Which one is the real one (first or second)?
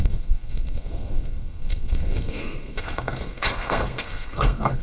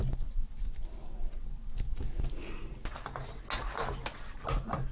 second